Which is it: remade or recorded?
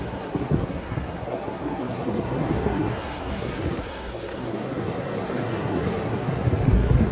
remade